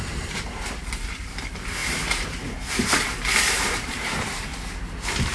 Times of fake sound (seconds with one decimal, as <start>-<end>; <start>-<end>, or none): 0.0-4.5